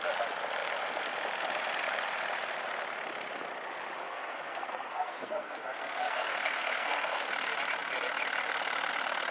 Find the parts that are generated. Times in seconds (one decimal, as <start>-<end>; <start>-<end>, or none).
4.0-7.3